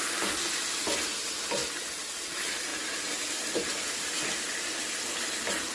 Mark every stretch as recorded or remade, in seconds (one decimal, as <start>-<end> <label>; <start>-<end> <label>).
0.0-5.7 recorded